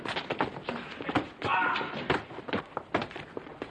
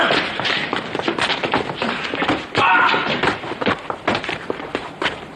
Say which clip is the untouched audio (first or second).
first